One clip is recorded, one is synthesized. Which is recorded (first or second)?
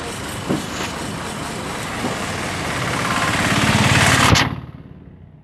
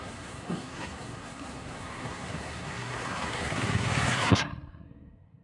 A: first